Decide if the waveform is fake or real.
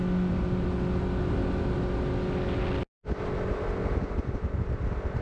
real